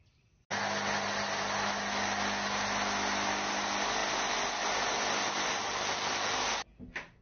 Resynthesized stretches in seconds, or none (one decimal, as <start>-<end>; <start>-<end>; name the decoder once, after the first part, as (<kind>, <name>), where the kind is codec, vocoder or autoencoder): none